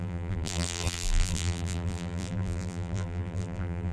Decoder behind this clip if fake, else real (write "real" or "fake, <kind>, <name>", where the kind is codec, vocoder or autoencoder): fake, vocoder, BigVGAN v2